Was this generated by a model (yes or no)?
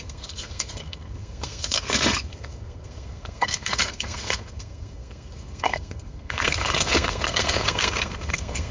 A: yes